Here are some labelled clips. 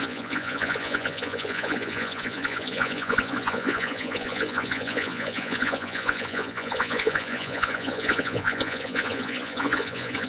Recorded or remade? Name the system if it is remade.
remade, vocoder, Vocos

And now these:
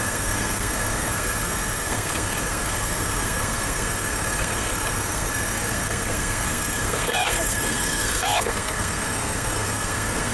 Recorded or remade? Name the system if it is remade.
remade, codec, SNAC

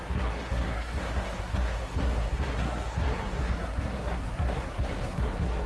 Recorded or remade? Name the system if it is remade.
remade, codec, SNAC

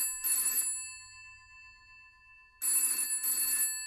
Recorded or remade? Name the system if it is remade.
recorded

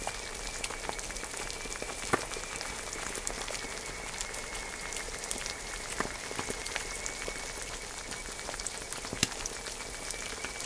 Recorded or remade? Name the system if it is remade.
recorded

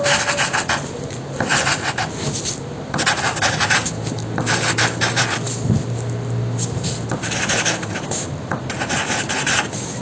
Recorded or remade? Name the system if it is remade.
recorded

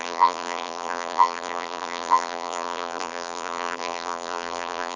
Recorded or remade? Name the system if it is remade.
remade, vocoder, BigVGAN v2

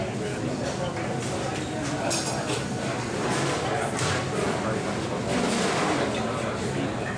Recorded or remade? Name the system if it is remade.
recorded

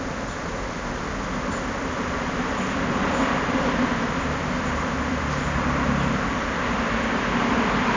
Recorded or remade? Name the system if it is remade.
remade, vocoder, BigVGAN v2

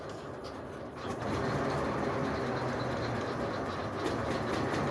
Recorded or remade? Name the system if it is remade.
recorded